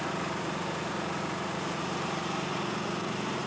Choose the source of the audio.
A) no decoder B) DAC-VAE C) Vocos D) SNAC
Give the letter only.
C